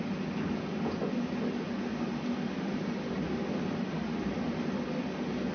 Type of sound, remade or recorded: recorded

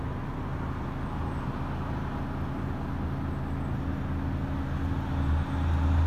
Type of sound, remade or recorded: recorded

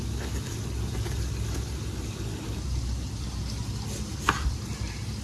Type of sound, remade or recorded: recorded